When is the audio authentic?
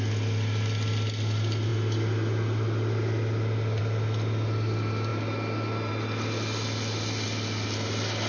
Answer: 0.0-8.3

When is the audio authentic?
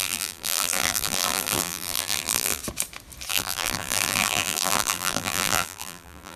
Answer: 2.6-3.3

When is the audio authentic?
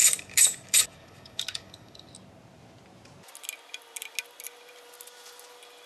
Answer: 2.1-5.9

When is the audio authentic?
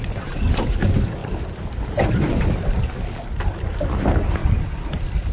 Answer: 0.0-5.3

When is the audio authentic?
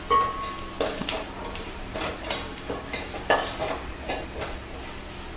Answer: 0.0-1.0; 3.2-3.6; 4.1-5.4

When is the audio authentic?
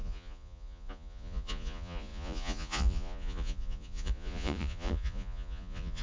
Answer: none